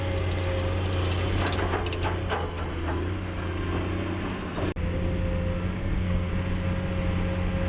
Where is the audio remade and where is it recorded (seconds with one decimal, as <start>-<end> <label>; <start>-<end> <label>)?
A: 0.0-5.8 recorded; 5.8-6.3 remade; 6.3-7.7 recorded